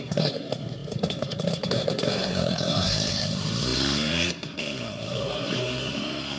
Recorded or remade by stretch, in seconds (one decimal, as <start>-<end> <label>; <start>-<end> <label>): 0.0-6.4 remade